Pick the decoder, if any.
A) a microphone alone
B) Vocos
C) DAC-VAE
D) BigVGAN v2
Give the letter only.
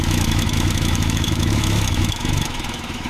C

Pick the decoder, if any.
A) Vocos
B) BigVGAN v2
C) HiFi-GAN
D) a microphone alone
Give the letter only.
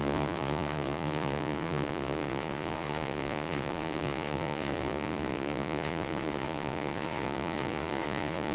A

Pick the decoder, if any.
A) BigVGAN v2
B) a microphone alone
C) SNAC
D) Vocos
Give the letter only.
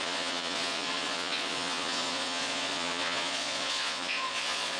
D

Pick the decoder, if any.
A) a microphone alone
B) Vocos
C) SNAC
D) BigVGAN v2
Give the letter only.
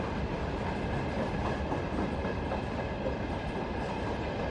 A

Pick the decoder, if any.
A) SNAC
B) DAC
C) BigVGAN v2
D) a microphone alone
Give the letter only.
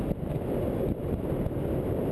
D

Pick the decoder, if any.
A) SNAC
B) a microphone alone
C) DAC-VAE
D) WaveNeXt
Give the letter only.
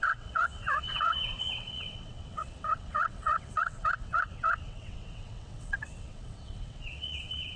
D